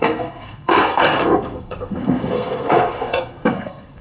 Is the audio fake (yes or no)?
yes